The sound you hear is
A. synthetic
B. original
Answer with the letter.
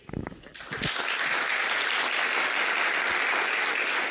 B